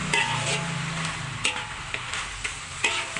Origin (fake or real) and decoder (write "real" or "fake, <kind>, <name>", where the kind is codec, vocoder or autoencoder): real